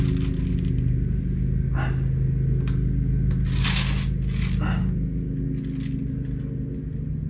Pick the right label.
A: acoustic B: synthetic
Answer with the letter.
A